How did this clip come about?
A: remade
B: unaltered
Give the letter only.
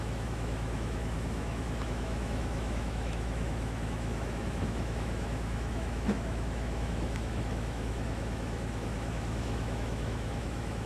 A